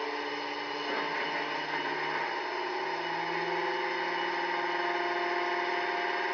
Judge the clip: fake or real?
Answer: real